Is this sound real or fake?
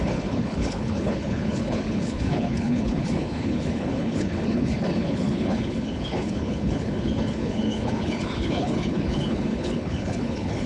fake